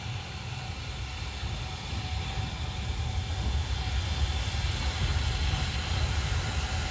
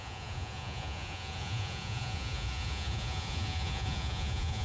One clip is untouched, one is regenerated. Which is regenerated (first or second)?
second